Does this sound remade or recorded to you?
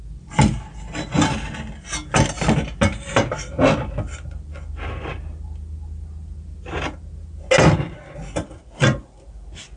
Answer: recorded